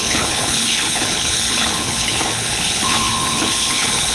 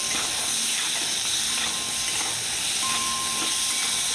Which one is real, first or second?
second